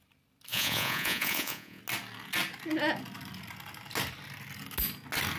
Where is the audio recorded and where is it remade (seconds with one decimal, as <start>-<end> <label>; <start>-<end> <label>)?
0.0-0.5 recorded; 0.5-1.8 remade; 1.8-5.4 recorded